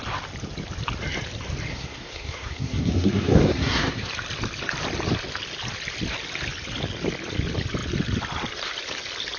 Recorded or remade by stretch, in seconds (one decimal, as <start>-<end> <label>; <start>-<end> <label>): 0.0-1.7 recorded; 1.7-4.1 remade; 4.1-9.4 recorded